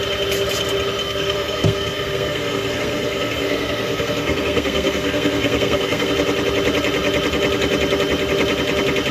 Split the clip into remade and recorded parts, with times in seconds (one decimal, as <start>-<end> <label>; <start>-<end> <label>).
0.0-1.0 recorded; 1.0-6.1 remade; 6.1-9.1 recorded